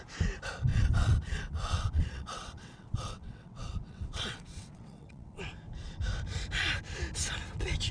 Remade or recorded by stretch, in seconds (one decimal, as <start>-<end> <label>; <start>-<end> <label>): 0.0-0.7 recorded; 0.7-5.4 remade; 5.4-7.9 recorded